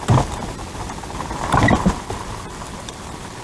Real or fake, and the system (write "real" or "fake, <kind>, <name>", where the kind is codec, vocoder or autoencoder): real